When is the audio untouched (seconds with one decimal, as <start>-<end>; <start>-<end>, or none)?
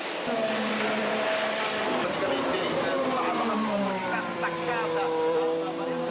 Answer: 0.0-1.0; 4.7-6.1